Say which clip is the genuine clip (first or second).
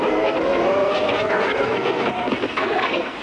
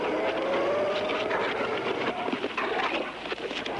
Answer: second